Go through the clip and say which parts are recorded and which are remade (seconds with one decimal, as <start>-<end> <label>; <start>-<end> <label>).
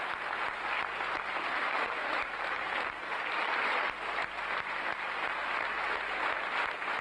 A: 0.0-1.5 recorded; 1.5-3.5 remade; 3.5-7.0 recorded